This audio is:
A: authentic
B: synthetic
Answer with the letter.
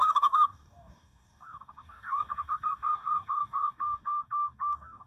B